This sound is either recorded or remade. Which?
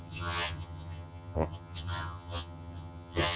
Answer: remade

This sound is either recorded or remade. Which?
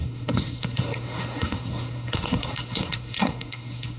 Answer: remade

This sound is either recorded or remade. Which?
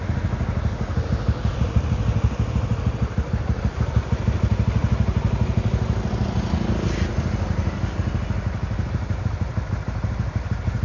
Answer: recorded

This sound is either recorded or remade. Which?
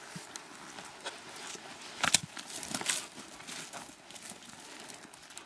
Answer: recorded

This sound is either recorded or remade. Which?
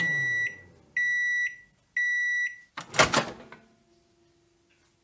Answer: recorded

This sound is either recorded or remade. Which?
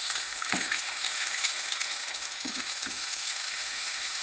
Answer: remade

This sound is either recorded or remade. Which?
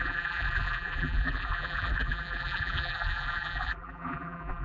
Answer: remade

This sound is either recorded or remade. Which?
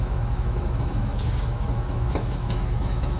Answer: remade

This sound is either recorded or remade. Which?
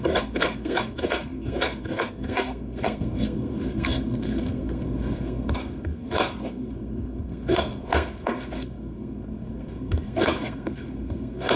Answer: remade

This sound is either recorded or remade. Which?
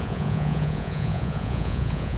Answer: remade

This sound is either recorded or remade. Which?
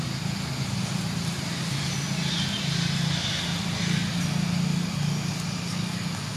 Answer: recorded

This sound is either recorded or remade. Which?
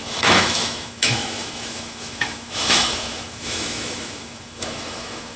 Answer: remade